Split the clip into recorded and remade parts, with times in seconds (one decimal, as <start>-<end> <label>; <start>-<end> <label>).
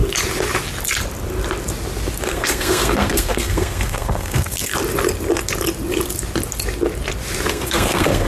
0.0-2.3 recorded; 2.3-4.7 remade; 4.7-7.5 recorded; 7.5-8.3 remade